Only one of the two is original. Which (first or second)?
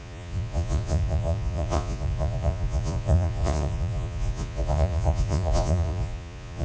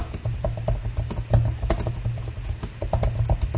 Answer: second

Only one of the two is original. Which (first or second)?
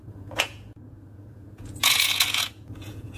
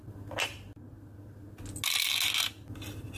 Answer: second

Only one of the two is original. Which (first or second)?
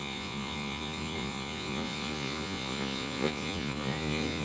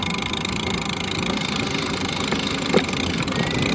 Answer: second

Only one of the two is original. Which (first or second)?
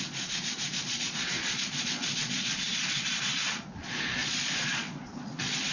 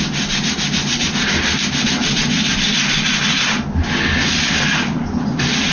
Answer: second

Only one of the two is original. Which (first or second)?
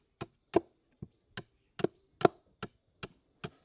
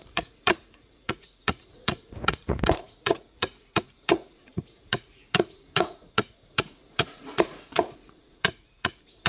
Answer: first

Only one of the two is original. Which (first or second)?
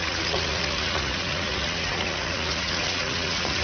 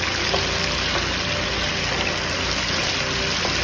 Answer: second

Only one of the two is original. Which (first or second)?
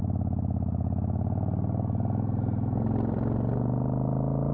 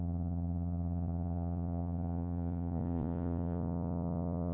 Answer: first